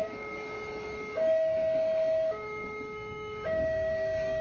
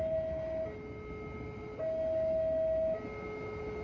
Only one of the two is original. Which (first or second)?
second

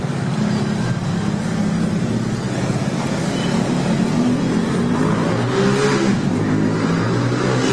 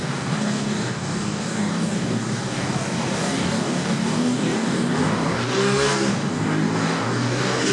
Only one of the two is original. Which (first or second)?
first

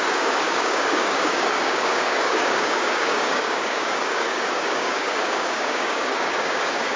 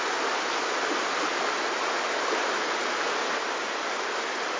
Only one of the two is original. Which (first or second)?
second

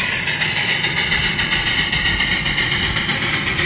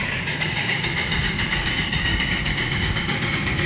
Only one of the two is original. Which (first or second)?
first